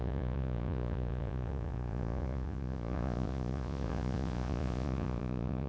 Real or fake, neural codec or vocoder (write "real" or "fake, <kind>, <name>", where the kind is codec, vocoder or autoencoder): fake, vocoder, Vocos